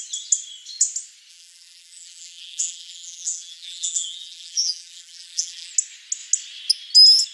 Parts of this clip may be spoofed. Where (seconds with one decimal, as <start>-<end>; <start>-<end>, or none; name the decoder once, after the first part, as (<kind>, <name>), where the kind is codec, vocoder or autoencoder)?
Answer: 1.3-5.7 (vocoder, BigVGAN v2)